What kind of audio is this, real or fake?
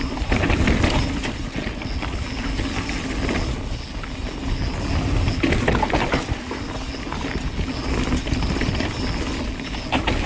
real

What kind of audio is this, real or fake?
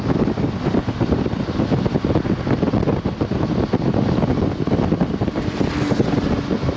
real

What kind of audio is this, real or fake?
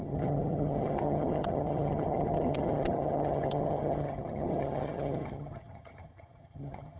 fake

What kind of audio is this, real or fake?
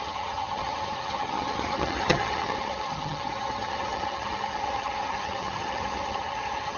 fake